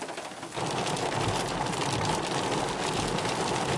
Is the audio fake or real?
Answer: real